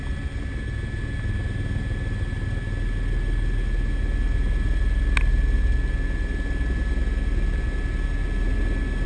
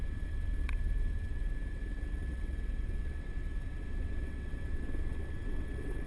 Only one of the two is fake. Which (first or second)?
second